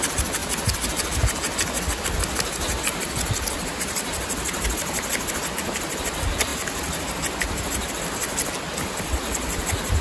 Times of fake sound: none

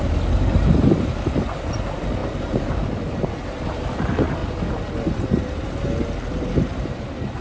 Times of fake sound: 0.0-4.4 (vocoder, BigVGAN v2); 6.1-7.4

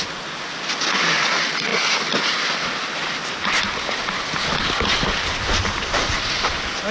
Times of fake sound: none

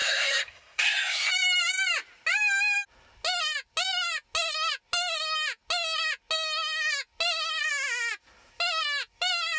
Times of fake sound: 0.0-1.3 (codec, SNAC)

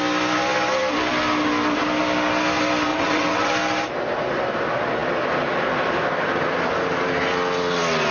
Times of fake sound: 2.9-3.5 (vocoder, WaveNeXt)